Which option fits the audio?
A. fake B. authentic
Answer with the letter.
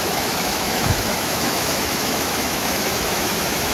A